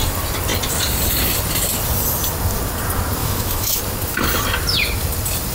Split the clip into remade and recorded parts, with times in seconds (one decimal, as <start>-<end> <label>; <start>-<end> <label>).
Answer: 0.0-3.2 recorded; 3.2-3.8 remade; 3.8-5.5 recorded